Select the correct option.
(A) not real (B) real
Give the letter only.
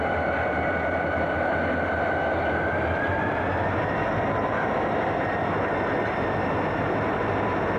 B